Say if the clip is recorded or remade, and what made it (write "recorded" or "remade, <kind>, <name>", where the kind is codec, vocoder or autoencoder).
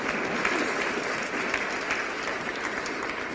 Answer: recorded